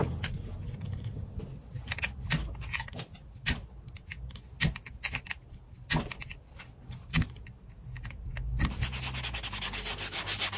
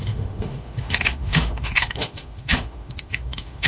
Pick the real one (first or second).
first